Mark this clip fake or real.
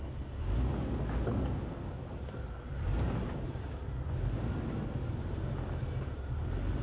real